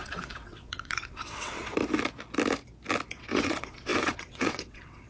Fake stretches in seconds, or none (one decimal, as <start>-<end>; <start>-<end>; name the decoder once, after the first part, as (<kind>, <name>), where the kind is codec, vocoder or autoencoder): 0.0-1.8 (vocoder, WaveNeXt); 3.2-5.1